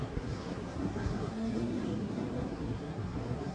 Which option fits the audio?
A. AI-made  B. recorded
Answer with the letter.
A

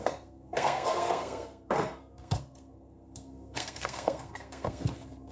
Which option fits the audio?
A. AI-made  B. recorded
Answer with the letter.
A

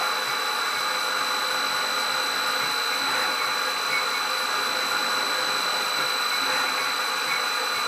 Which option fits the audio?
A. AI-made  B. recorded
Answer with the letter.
B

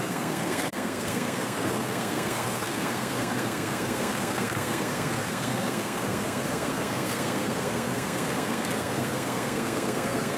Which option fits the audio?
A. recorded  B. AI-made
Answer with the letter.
B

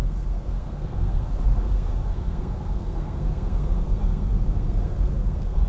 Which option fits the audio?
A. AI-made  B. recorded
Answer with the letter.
A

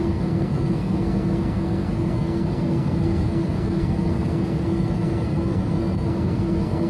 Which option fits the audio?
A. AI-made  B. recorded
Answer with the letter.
A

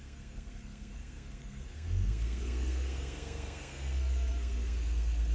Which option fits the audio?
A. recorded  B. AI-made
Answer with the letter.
B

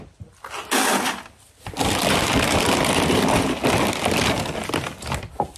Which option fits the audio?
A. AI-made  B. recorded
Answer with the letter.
B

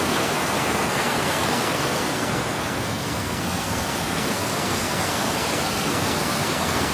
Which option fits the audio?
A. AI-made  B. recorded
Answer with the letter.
A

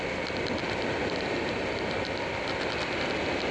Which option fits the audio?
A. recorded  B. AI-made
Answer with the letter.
A